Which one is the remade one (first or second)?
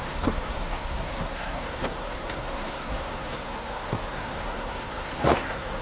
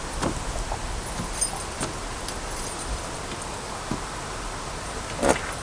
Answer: first